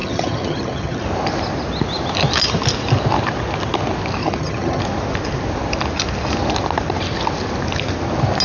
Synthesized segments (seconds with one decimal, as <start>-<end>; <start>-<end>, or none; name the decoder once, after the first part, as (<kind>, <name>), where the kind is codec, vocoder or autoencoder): 0.0-1.0 (vocoder, HiFi-GAN); 4.2-4.8